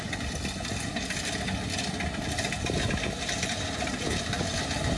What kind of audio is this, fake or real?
real